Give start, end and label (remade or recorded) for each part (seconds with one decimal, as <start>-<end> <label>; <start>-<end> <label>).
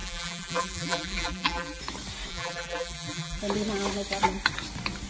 0.0-1.8 remade; 1.8-2.3 recorded; 2.3-3.4 remade; 3.4-5.1 recorded